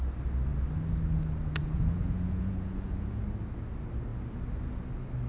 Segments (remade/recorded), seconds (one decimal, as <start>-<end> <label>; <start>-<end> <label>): 0.0-1.6 recorded; 1.6-3.2 remade; 3.2-5.3 recorded